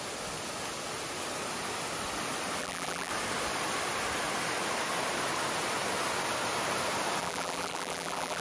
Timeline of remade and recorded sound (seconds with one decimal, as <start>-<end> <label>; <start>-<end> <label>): 0.0-2.6 recorded; 2.6-3.1 remade; 3.1-7.2 recorded; 7.2-8.4 remade